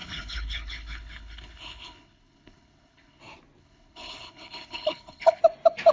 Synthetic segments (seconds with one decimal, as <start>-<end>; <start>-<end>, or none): 0.0-3.2; 3.6-5.4